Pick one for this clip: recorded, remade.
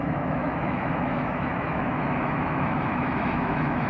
remade